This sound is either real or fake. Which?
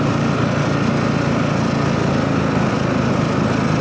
real